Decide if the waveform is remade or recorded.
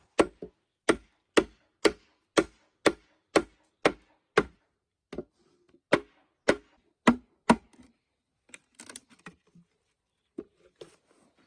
recorded